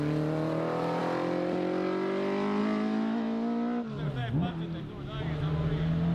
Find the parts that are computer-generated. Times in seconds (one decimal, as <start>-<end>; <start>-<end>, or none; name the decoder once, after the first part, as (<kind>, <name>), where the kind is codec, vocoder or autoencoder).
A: none